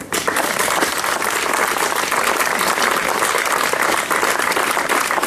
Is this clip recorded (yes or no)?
no